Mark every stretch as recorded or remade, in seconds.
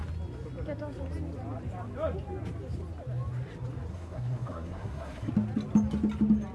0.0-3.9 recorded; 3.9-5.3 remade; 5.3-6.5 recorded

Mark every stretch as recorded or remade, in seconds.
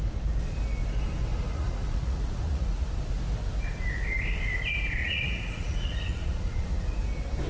0.0-1.3 recorded; 1.3-2.9 remade; 2.9-5.0 recorded; 5.0-6.9 remade; 6.9-7.5 recorded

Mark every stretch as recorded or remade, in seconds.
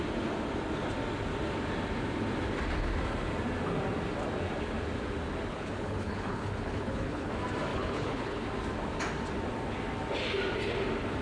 0.0-5.5 recorded; 5.5-7.3 remade; 7.3-7.7 recorded; 7.7-8.4 remade; 8.4-11.2 recorded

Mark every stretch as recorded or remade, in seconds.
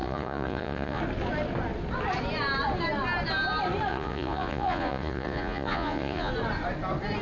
0.0-1.0 remade; 1.0-3.9 recorded; 3.9-6.3 remade; 6.3-7.2 recorded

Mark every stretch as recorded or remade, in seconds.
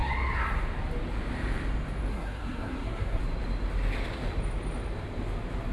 0.0-2.1 recorded; 2.1-3.2 remade; 3.2-5.7 recorded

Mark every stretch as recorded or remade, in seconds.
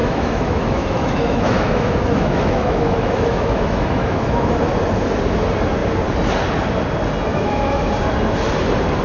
0.0-4.7 remade; 4.7-7.3 recorded; 7.3-7.9 remade; 7.9-9.0 recorded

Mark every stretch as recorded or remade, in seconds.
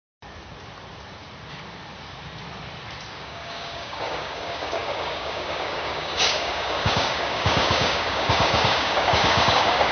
0.0-3.1 recorded; 3.1-9.9 remade